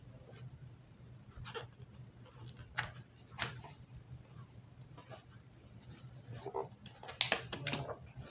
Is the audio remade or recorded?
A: recorded